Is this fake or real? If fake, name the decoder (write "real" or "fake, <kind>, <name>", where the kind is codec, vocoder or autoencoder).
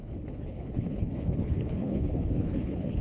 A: fake, codec, HILCodec